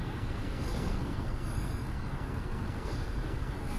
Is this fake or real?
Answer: fake